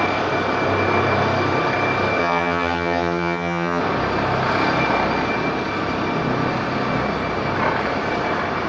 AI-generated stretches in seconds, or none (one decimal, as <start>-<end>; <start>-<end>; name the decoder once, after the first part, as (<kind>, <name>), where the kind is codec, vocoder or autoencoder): 2.2-3.8 (vocoder, HiFi-GAN)